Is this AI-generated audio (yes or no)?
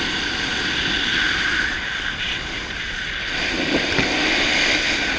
no